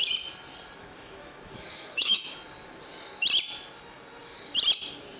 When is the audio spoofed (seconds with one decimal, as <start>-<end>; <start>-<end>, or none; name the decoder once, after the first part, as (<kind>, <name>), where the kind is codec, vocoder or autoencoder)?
0.8-2.4 (autoencoder, DAC-VAE)